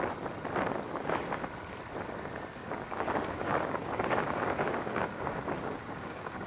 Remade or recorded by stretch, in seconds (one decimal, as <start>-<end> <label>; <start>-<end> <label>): 0.0-2.6 recorded; 2.6-6.5 remade